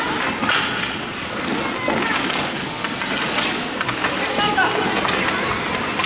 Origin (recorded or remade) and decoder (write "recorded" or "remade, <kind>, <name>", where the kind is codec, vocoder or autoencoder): recorded